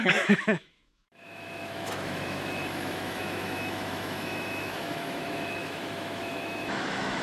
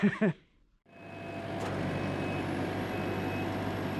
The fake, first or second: first